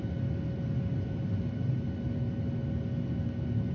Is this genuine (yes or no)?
yes